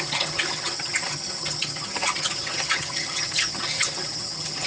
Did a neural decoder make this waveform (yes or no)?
yes